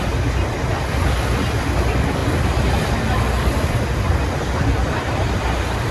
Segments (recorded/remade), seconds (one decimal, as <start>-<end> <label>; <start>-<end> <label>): 0.0-5.9 recorded